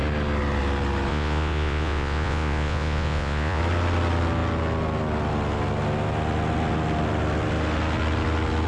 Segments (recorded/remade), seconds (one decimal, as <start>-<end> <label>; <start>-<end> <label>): 0.0-1.1 recorded; 1.1-3.6 remade; 3.6-8.7 recorded